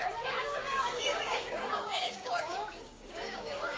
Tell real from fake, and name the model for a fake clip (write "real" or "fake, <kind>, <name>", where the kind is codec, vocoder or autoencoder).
fake, codec, DAC